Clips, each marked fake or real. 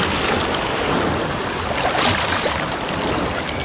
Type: real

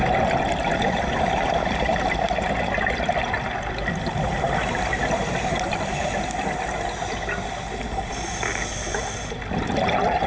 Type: real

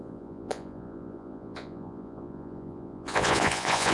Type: fake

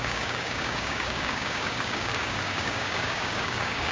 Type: fake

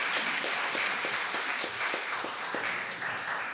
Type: fake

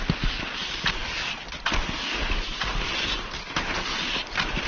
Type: real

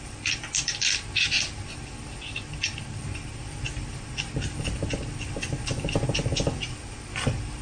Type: real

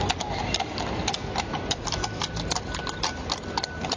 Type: real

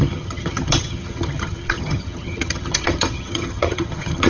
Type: fake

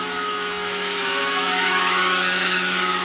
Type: fake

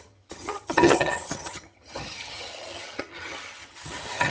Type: fake